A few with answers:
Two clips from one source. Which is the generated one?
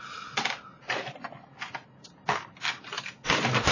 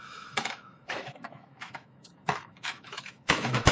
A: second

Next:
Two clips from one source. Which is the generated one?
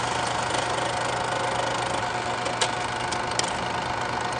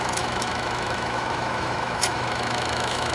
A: second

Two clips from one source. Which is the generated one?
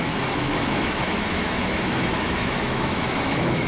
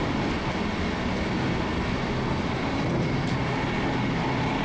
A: first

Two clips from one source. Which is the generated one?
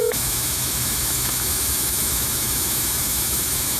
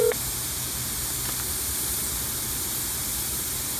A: first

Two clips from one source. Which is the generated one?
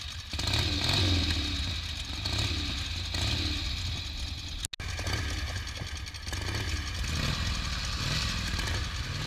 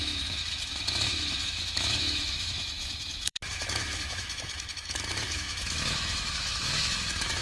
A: second